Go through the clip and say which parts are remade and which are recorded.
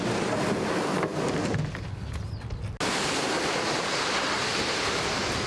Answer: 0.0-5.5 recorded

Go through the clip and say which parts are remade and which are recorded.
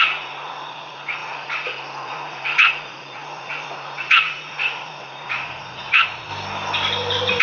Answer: 0.0-6.3 remade; 6.3-7.4 recorded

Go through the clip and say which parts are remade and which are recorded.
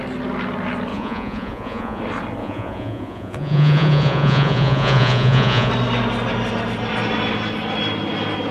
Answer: 0.0-0.9 recorded; 0.9-2.0 remade; 2.0-2.4 recorded; 2.4-5.7 remade; 5.7-8.5 recorded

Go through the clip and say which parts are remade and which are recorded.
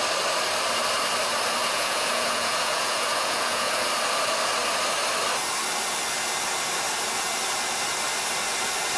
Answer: 0.0-1.6 recorded; 1.6-3.9 remade; 3.9-9.0 recorded